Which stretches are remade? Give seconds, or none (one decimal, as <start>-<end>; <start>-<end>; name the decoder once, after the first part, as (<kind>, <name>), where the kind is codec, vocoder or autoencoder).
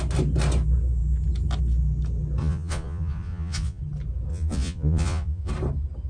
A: 2.4-3.8 (vocoder, Vocos); 4.3-5.5